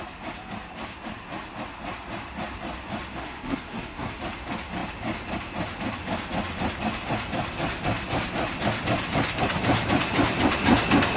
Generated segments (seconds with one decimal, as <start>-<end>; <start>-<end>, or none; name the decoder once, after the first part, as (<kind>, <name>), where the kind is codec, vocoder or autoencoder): 3.2-4.2 (codec, SNAC)